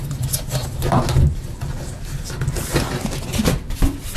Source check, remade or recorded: recorded